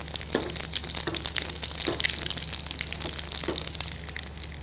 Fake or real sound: real